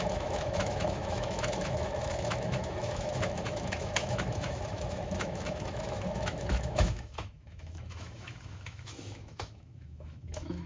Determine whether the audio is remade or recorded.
remade